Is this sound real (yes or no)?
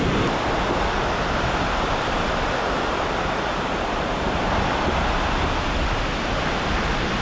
yes